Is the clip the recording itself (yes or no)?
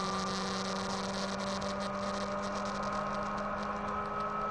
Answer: yes